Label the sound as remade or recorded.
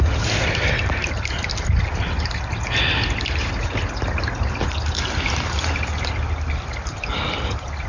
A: recorded